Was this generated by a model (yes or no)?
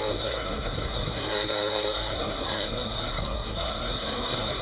yes